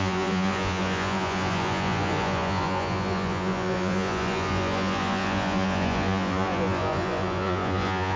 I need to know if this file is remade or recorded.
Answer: remade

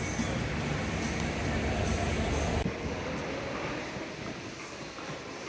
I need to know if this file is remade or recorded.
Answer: recorded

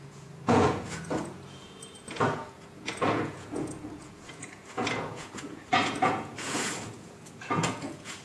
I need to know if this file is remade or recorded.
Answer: remade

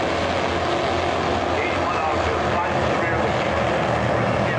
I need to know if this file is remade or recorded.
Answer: recorded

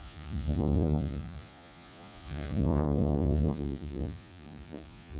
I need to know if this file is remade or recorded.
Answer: remade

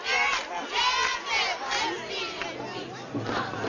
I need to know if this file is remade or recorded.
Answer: recorded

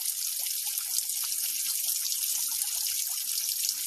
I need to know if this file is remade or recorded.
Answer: recorded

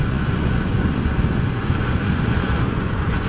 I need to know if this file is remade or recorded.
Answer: remade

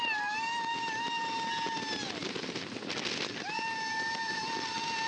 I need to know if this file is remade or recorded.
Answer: recorded